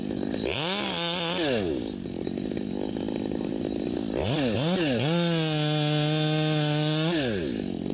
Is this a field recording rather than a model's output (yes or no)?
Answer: yes